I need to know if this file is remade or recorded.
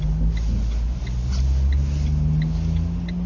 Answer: recorded